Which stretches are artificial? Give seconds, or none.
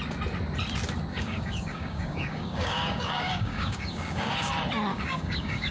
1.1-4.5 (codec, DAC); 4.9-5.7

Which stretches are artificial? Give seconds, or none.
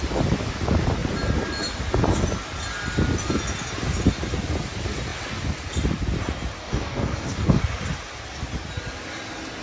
6.6-7.6 (codec, DAC)